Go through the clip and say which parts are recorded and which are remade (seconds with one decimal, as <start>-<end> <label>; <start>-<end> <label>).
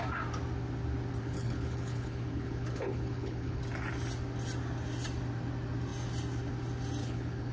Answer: 0.0-1.2 recorded; 1.2-3.6 remade; 3.6-7.0 recorded; 7.0-7.5 remade